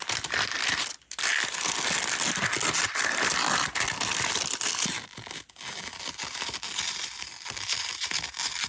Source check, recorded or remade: recorded